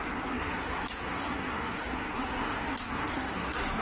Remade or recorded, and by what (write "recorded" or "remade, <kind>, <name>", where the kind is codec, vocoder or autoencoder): remade, codec, SNAC